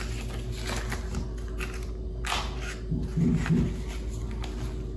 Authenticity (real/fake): real